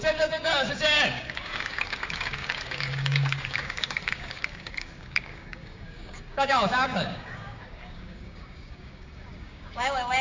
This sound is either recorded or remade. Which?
remade